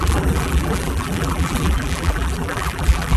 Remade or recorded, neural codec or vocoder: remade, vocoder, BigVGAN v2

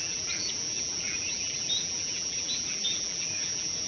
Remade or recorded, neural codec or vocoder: remade, vocoder, BigVGAN v2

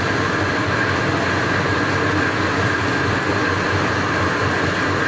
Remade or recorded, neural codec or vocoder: recorded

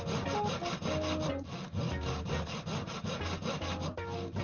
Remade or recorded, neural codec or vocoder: recorded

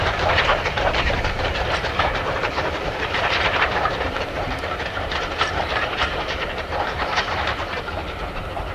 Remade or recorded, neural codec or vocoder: remade, vocoder, BigVGAN v2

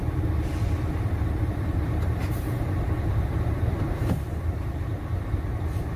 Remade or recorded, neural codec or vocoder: remade, vocoder, BigVGAN v2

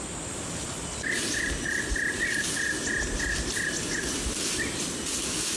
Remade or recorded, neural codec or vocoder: recorded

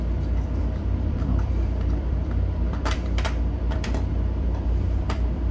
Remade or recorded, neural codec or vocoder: remade, vocoder, BigVGAN v2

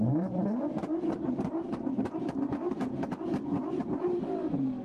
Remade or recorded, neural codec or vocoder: remade, vocoder, BigVGAN v2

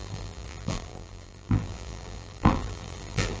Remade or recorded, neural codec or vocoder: remade, vocoder, BigVGAN v2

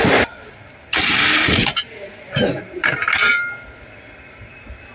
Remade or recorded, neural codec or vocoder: remade, vocoder, BigVGAN v2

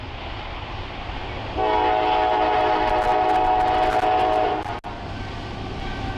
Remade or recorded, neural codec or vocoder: recorded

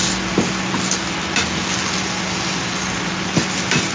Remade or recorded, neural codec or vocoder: recorded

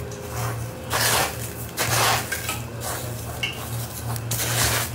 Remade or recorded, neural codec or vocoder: recorded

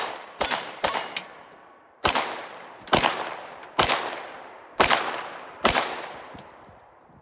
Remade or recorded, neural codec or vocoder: remade, vocoder, BigVGAN v2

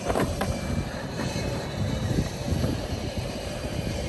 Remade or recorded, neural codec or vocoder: remade, vocoder, BigVGAN v2